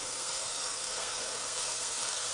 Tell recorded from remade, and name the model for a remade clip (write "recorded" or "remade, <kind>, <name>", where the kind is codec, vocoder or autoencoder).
remade, codec, SNAC